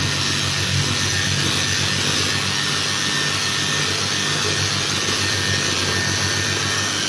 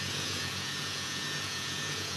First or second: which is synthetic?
second